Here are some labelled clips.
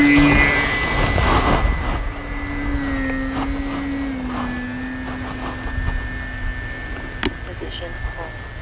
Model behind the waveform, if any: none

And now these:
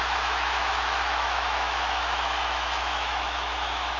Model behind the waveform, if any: autoencoder, DAC-VAE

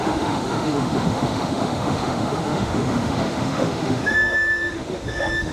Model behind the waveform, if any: autoencoder, DAC-VAE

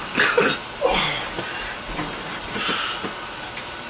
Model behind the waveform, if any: none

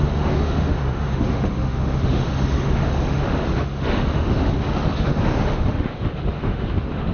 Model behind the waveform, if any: autoencoder, DAC-VAE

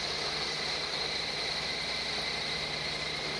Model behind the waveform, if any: none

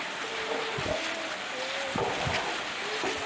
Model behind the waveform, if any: none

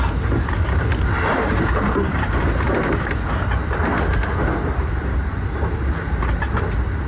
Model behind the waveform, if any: none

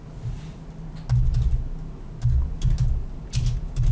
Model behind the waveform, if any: none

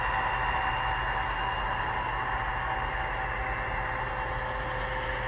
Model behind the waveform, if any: none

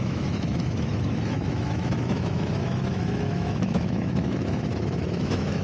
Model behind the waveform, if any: autoencoder, DAC-VAE